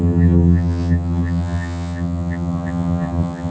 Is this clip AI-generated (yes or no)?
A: yes